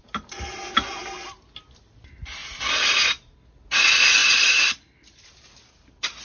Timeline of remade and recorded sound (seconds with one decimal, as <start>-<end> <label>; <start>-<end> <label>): 0.0-6.2 recorded